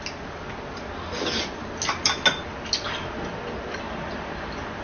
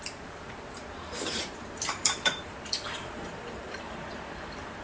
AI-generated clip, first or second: second